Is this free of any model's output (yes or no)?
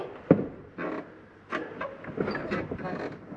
yes